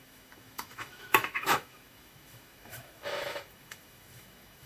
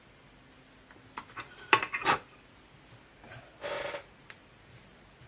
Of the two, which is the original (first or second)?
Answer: second